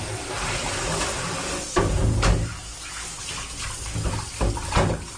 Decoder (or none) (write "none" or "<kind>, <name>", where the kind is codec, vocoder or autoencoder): none